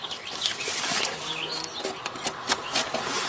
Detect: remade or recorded recorded